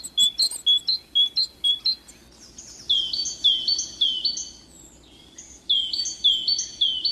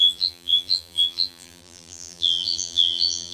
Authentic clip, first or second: first